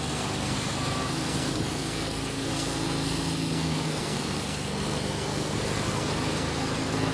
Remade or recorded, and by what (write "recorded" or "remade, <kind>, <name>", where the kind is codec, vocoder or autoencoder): remade, codec, SNAC